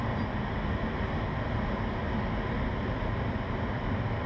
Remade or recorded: recorded